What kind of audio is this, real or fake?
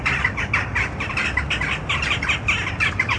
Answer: real